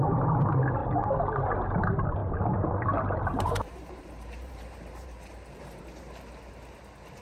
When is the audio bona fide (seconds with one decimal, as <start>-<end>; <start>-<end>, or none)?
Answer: 0.0-2.2; 5.8-7.2